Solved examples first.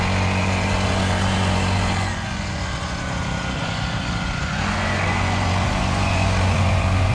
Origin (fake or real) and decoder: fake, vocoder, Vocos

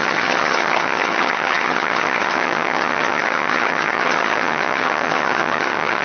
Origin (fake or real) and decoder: fake, vocoder, HiFi-GAN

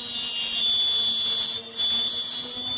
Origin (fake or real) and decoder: real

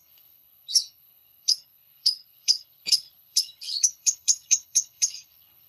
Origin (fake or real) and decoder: fake, codec, HILCodec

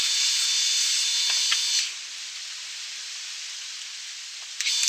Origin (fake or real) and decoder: fake, vocoder, BigVGAN v2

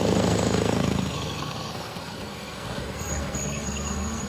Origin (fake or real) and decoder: fake, codec, SNAC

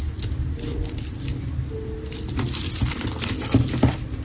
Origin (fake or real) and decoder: real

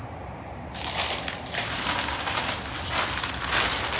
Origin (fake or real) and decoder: real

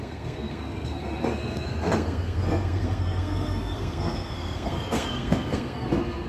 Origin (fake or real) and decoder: fake, codec, SNAC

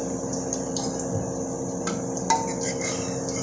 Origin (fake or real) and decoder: real